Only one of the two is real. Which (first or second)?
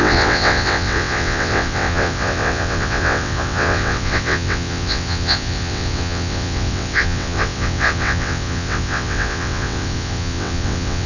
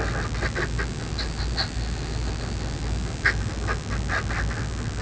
second